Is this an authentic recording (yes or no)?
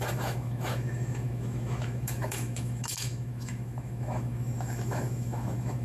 no